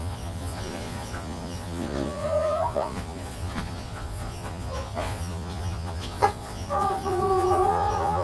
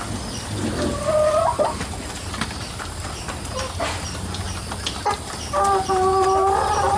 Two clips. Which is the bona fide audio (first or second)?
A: second